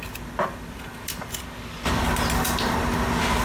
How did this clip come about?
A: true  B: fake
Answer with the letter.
A